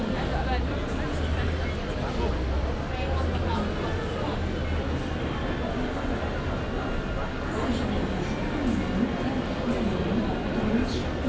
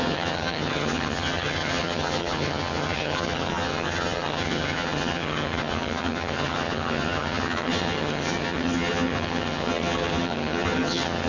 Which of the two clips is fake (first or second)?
second